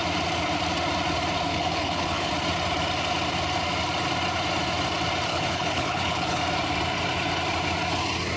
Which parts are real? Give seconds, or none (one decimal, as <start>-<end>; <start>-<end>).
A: 0.0-1.5; 2.3-5.3; 6.4-8.4